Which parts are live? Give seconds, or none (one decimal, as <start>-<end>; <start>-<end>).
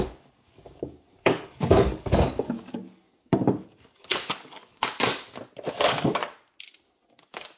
4.8-5.7; 6.2-7.1